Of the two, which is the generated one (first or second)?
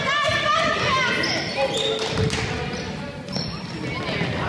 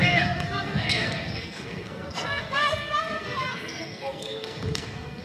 second